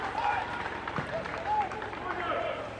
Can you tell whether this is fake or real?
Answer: fake